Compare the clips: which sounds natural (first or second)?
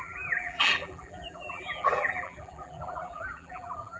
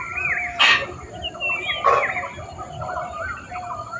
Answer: second